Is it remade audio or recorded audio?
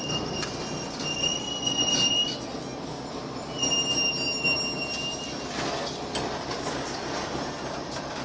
recorded